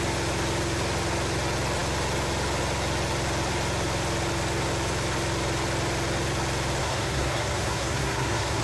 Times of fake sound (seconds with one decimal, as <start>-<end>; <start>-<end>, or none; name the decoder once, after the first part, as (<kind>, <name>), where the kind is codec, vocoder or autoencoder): 6.8-8.6 (codec, SNAC)